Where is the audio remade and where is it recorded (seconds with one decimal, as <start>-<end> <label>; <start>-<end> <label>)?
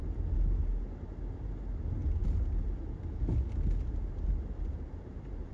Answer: 0.0-5.5 recorded